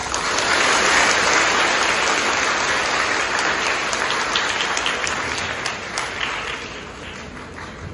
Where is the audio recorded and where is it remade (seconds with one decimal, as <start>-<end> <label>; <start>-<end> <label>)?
0.0-7.9 recorded